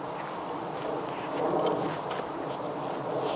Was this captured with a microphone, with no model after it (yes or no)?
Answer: yes